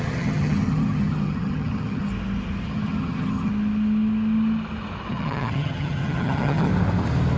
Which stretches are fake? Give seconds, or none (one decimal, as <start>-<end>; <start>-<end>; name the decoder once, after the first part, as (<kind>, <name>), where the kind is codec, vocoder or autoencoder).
0.0-2.1 (vocoder, HiFi-GAN); 2.7-3.5; 5.1-6.7